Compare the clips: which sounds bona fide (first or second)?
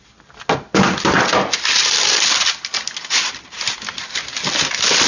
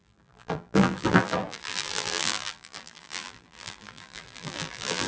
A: first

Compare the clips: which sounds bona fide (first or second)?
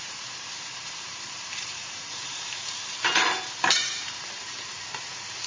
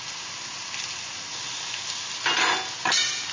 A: second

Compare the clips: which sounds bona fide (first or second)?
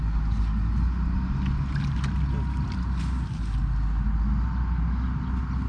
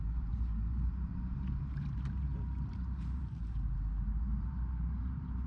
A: first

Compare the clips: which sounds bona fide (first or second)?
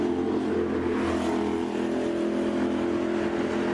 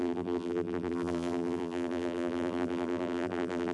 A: first